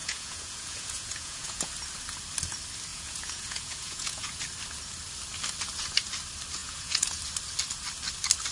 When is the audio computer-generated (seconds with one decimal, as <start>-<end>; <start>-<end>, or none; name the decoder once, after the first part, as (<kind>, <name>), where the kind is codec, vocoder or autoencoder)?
0.0-1.7 (vocoder, Vocos); 2.9-4.4; 6.6-7.2

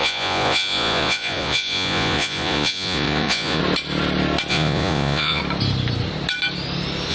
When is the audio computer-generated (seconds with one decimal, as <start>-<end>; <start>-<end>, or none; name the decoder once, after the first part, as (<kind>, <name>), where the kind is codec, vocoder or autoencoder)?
0.0-3.6 (vocoder, Vocos); 4.5-5.4

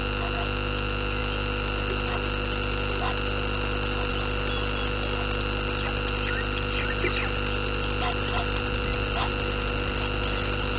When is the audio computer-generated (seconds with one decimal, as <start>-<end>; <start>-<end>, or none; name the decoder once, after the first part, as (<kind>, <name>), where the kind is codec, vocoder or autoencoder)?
none

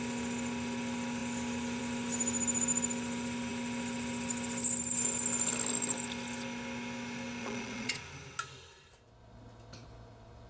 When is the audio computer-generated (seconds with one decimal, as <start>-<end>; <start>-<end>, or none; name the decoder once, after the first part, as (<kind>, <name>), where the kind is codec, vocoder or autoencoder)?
7.4-8.0 (vocoder, Vocos)

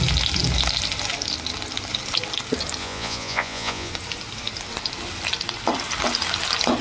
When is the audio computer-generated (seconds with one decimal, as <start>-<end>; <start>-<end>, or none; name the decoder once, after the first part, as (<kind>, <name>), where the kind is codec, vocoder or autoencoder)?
2.8-3.9 (vocoder, Vocos)